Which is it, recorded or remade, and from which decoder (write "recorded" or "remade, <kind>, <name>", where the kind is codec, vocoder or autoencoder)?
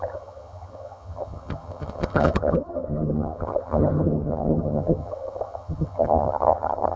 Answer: remade, vocoder, HiFi-GAN